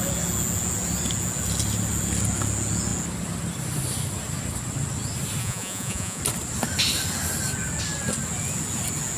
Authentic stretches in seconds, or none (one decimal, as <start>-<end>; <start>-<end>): 0.0-5.4; 6.2-9.2